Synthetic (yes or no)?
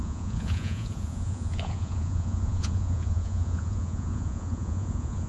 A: yes